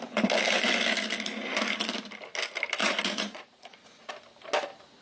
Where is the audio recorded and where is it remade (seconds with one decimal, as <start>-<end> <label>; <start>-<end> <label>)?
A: 0.0-2.8 recorded; 2.8-4.1 remade; 4.1-5.0 recorded